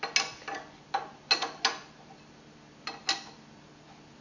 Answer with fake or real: real